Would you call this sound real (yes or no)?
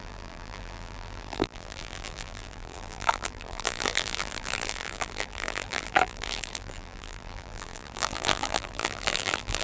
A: no